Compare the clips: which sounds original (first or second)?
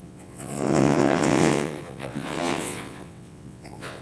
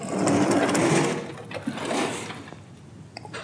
second